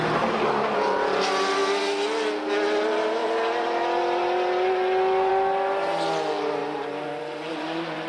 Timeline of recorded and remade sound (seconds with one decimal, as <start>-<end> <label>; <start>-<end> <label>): 0.0-8.1 recorded